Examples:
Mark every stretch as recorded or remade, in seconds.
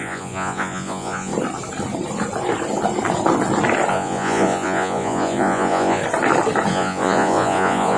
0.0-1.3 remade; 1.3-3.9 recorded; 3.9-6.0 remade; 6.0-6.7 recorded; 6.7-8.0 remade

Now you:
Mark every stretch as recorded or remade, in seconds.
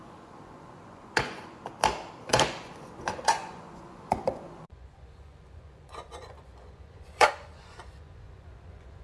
0.0-1.6 remade; 1.6-2.3 recorded; 2.3-9.0 remade